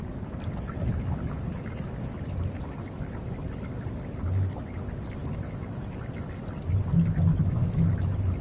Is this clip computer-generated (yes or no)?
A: no